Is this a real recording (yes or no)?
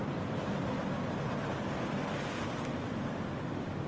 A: yes